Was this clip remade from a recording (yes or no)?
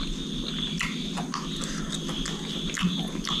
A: no